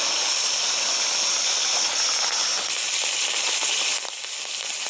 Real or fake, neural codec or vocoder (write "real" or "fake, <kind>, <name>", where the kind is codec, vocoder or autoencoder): real